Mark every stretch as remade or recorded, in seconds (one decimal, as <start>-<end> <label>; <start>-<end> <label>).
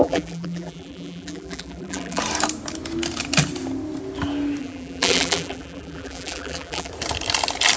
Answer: 0.0-2.2 remade; 2.2-4.6 recorded; 4.6-6.9 remade; 6.9-7.8 recorded